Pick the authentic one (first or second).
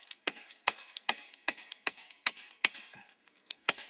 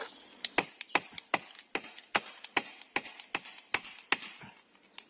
second